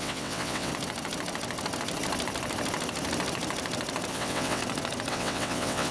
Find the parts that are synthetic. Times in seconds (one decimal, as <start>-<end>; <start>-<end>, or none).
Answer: 0.0-0.7; 4.1-4.6; 5.1-5.9